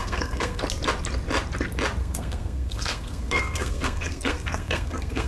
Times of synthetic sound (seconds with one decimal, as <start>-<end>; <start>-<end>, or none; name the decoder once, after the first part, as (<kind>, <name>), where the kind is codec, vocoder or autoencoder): 0.0-0.6 (codec, SNAC); 2.0-5.3